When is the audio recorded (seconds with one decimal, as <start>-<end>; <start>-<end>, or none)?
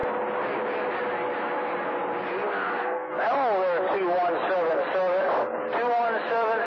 0.0-2.5; 3.1-6.7